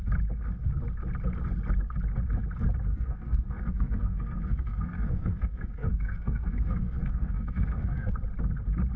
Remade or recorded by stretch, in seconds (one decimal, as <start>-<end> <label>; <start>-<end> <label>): 0.0-2.9 recorded; 2.9-8.1 remade; 8.1-9.0 recorded